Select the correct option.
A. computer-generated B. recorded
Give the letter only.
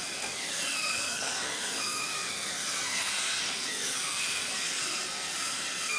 A